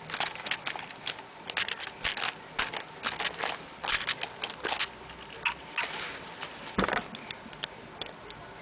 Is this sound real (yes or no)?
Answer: yes